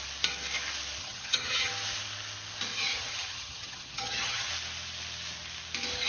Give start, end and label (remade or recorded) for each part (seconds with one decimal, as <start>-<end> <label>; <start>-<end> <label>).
0.0-1.0 recorded; 1.0-1.7 remade; 1.7-2.9 recorded; 2.9-4.5 remade; 4.5-6.1 recorded